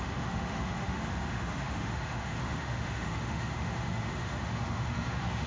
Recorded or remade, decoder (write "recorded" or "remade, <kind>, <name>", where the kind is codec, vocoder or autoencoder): remade, autoencoder, DAC-VAE